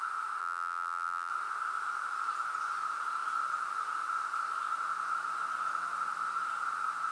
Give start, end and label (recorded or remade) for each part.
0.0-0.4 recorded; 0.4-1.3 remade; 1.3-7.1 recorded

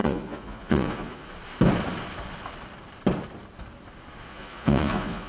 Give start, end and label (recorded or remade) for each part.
0.0-1.3 remade; 1.3-4.3 recorded; 4.3-5.3 remade

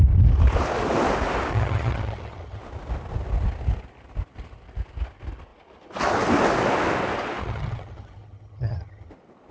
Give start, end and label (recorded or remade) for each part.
0.0-1.5 recorded; 1.5-2.6 remade; 2.6-7.4 recorded; 7.4-9.1 remade; 9.1-9.5 recorded

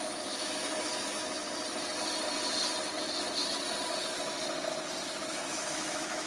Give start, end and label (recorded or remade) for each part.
0.0-1.4 remade; 1.4-5.2 recorded; 5.2-6.3 remade

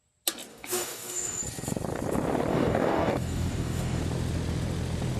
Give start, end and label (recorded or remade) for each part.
0.0-0.5 recorded; 0.5-1.4 remade; 1.4-2.5 recorded; 2.5-4.0 remade; 4.0-5.2 recorded

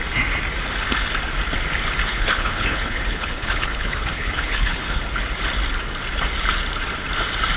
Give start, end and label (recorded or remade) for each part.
0.0-2.1 recorded; 2.1-5.0 remade; 5.0-7.6 recorded

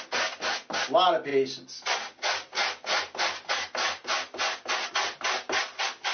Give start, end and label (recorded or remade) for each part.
0.0-6.1 recorded

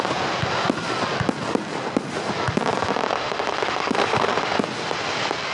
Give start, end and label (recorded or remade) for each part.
0.0-3.1 recorded; 3.1-4.6 remade; 4.6-5.5 recorded